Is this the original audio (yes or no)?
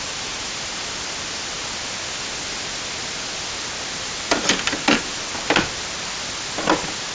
yes